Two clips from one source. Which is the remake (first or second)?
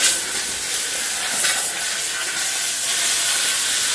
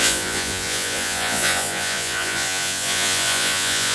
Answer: second